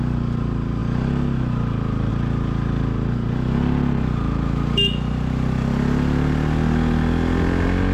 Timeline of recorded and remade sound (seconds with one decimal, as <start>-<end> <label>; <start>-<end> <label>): 0.0-7.9 recorded